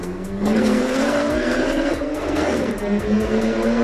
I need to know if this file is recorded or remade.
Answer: remade